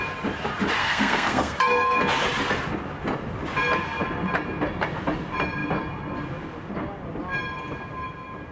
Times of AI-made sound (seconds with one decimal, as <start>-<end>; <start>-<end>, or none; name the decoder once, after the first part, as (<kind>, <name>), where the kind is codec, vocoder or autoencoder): 0.8-2.0 (codec, SNAC)